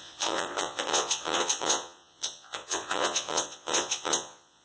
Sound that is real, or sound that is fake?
fake